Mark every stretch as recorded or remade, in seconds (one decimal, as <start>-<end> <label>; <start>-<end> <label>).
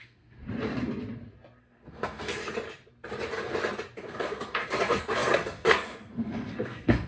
0.0-0.4 remade; 0.4-1.6 recorded; 1.6-2.4 remade; 2.4-4.0 recorded; 4.0-7.1 remade